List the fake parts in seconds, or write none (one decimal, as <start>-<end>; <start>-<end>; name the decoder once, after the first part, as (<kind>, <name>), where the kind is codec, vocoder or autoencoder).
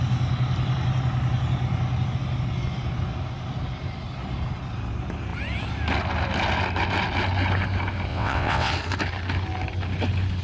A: 8.1-8.7 (vocoder, WaveNeXt)